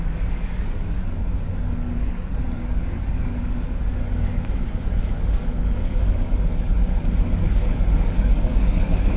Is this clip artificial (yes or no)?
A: yes